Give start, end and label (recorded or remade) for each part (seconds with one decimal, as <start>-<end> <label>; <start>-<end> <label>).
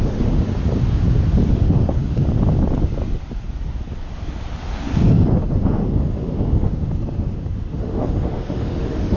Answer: 0.0-0.5 remade; 0.5-1.5 recorded; 1.5-2.0 remade; 2.0-5.0 recorded; 5.0-9.2 remade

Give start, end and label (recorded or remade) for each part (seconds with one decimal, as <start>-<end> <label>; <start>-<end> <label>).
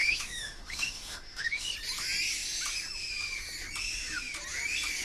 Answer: 0.0-1.7 remade; 1.7-5.0 recorded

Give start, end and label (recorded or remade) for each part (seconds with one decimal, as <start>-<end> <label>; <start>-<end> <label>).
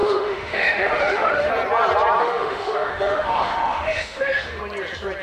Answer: 0.0-1.5 remade; 1.5-2.2 recorded; 2.2-4.6 remade; 4.6-5.2 recorded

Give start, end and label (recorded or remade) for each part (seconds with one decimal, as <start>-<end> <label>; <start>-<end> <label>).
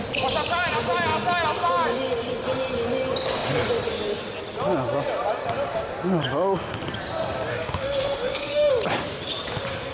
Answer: 0.0-7.5 recorded; 7.5-8.7 remade; 8.7-9.9 recorded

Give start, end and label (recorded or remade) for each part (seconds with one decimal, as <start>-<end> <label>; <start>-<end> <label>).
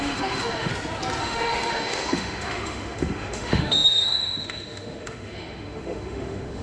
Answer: 0.0-0.7 remade; 0.7-1.2 recorded; 1.2-6.6 remade